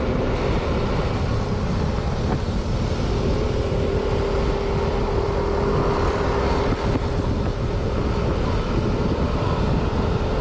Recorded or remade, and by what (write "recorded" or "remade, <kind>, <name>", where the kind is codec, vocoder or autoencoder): recorded